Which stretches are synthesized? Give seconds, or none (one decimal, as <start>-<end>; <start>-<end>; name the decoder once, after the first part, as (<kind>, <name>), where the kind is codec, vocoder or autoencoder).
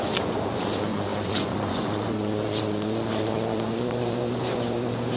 0.0-5.2 (vocoder, Vocos)